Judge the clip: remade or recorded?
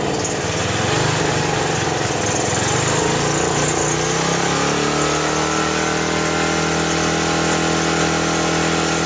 recorded